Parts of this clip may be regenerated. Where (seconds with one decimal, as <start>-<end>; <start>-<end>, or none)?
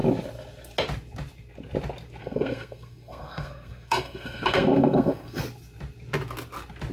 2.2-5.4